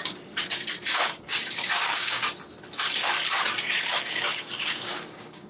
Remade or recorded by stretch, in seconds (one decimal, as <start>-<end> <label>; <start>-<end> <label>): 0.0-0.9 recorded; 0.9-2.3 remade; 2.3-3.9 recorded; 3.9-5.5 remade